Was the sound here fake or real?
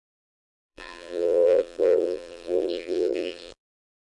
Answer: fake